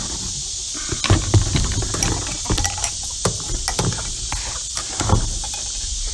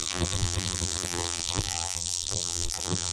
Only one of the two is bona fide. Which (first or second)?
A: first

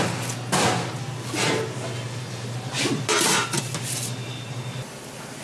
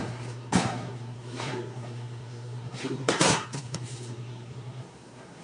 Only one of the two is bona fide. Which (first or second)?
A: first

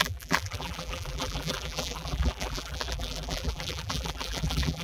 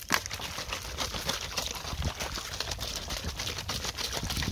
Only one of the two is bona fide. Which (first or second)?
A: second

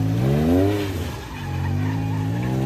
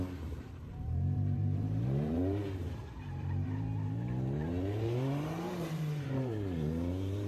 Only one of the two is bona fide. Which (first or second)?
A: first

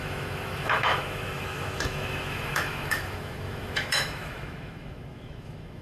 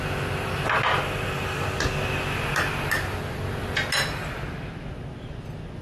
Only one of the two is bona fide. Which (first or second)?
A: second